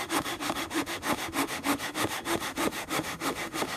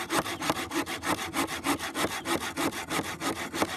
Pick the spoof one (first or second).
first